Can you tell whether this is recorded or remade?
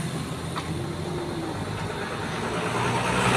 recorded